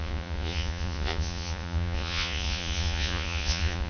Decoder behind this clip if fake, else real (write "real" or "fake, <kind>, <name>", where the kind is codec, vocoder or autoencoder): fake, vocoder, Vocos